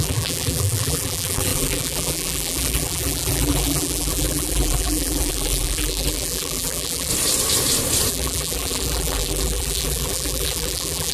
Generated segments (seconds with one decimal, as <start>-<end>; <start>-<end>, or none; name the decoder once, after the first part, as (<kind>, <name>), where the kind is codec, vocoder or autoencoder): 0.0-7.1 (vocoder, BigVGAN v2); 8.1-11.1